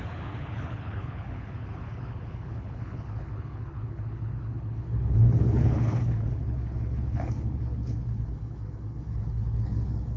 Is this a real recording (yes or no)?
no